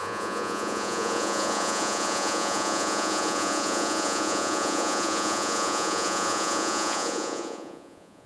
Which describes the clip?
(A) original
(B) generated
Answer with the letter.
B